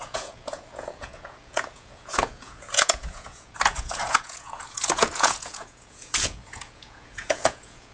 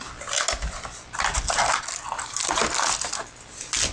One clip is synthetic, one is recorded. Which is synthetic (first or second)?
first